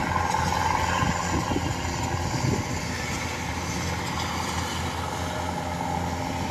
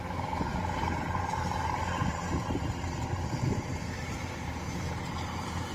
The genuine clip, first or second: first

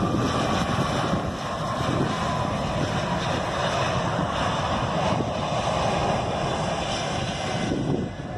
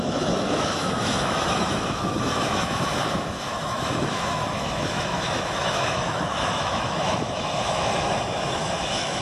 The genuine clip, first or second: first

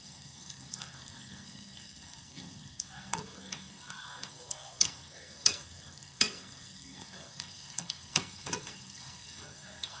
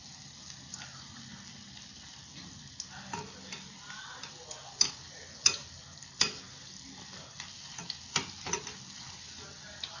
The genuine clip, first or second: second